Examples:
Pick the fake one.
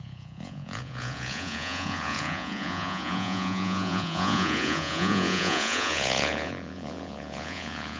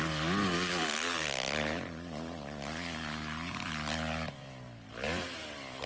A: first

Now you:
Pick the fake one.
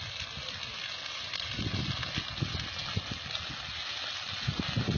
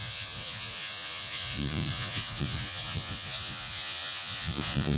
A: second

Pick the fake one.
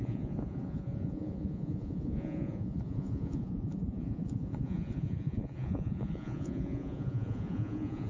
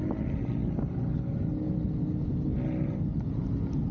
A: first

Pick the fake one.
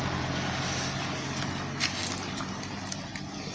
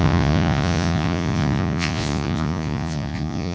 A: second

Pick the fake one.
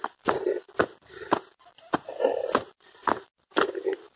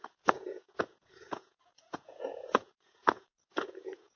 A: second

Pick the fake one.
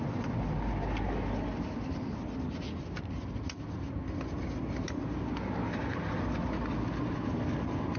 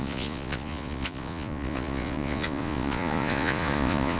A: second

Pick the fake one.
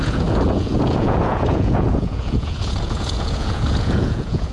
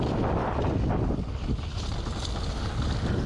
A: first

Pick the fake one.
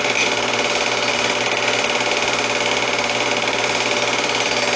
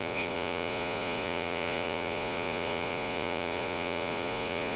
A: second